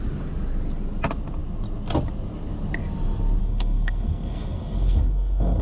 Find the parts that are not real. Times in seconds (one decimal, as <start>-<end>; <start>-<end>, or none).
3.4-5.6